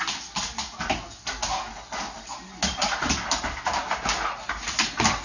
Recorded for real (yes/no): yes